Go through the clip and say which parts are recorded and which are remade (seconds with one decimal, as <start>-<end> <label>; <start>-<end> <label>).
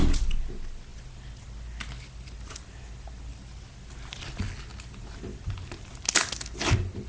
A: 0.0-7.1 recorded